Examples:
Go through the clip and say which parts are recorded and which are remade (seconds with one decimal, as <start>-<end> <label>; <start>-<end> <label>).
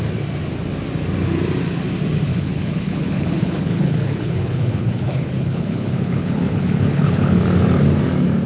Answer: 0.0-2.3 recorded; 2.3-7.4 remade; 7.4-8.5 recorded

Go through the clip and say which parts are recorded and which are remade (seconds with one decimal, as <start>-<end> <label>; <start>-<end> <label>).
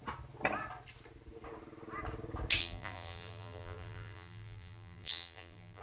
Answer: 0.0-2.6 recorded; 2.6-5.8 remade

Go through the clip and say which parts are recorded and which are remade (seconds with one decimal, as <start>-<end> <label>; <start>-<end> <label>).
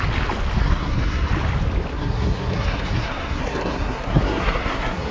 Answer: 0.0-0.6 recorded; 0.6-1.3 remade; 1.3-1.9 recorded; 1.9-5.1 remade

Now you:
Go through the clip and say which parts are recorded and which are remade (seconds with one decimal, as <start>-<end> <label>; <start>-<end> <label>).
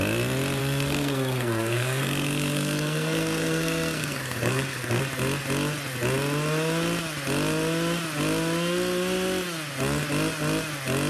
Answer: 0.0-0.6 recorded; 0.6-5.0 remade; 5.0-11.1 recorded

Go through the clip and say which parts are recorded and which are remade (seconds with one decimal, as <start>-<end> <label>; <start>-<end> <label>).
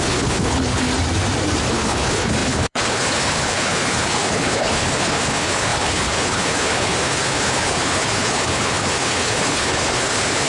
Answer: 0.0-0.9 remade; 0.9-1.7 recorded; 1.7-10.5 remade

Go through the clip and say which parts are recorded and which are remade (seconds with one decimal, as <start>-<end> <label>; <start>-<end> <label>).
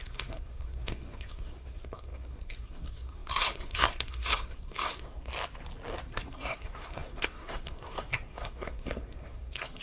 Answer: 0.0-5.3 remade; 5.3-6.1 recorded; 6.1-9.8 remade